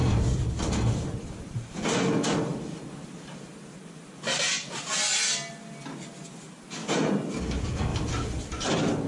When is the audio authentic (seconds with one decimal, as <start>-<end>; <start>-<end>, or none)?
1.3-6.8; 7.3-7.9; 8.7-9.1